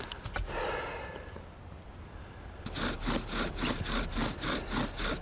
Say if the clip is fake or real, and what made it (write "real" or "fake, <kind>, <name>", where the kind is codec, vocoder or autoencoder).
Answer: real